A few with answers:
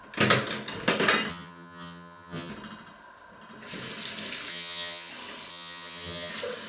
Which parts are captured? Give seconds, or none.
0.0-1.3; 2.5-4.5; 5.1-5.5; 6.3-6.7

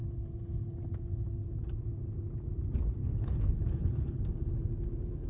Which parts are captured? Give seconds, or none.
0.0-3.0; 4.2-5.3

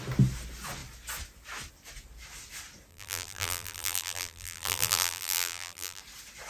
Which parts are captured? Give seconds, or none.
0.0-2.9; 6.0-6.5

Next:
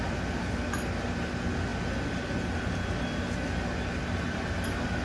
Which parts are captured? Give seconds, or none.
0.0-5.0

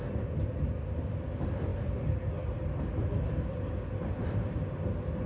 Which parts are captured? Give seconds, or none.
0.0-5.3

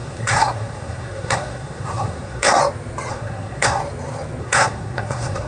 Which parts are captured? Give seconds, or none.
2.6-3.1; 3.8-4.4

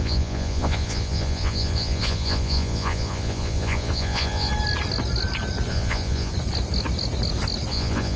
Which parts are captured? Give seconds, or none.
4.5-5.7; 6.3-7.7

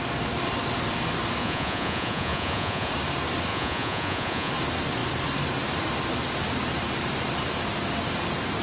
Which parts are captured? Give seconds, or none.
0.0-1.4; 2.9-3.5; 4.5-8.6